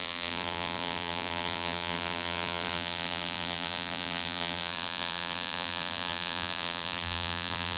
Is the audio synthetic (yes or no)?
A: yes